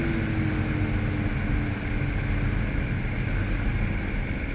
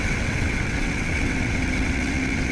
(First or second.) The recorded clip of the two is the first